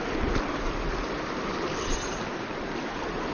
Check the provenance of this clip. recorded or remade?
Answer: remade